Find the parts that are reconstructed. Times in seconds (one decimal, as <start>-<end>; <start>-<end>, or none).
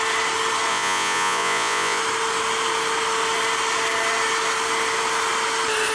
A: 0.7-2.0